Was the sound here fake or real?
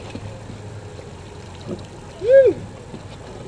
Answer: real